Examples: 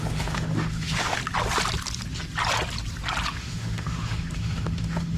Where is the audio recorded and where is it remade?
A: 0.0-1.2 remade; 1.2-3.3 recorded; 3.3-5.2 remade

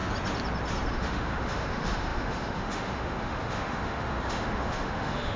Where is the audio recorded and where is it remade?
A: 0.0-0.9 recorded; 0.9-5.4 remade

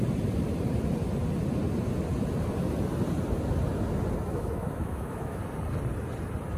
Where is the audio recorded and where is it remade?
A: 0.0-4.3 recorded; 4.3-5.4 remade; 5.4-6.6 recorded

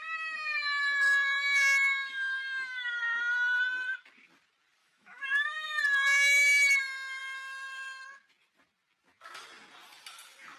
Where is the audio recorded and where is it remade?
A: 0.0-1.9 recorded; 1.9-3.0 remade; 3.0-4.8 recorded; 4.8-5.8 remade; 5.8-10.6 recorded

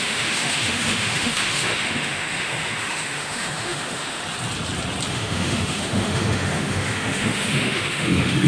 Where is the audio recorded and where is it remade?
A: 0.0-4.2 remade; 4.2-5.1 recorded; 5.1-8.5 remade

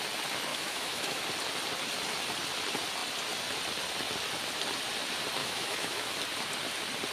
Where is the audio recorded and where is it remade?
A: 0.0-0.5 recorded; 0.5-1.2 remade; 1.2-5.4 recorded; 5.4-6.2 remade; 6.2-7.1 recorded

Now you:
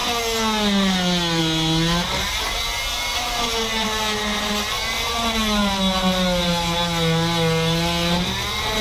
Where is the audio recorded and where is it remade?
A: 0.0-8.8 recorded

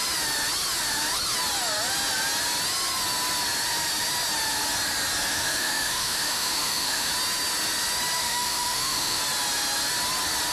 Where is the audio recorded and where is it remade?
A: 0.0-5.3 recorded; 5.3-7.1 remade; 7.1-8.2 recorded; 8.2-9.2 remade; 9.2-10.5 recorded